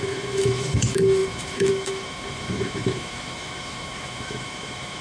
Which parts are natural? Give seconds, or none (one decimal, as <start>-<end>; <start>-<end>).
none